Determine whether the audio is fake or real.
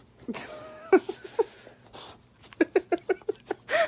real